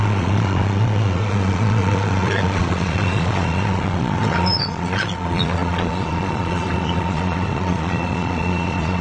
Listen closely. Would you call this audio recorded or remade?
remade